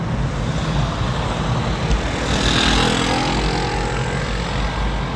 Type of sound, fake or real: real